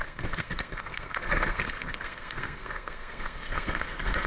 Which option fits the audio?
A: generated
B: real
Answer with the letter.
A